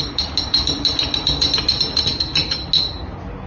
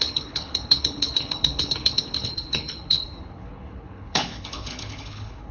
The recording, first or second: first